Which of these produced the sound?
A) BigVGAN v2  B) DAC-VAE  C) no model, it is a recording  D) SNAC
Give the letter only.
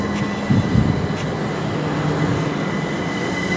C